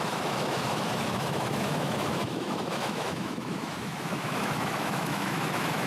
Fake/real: fake